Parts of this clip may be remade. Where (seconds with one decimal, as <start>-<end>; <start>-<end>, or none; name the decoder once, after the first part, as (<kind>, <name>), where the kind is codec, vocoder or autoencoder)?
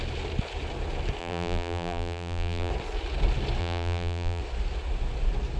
1.2-2.7 (vocoder, BigVGAN v2); 3.6-4.4